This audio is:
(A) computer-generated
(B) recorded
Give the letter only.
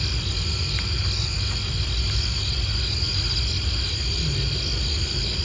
B